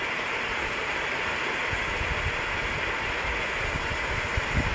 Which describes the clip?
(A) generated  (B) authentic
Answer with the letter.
B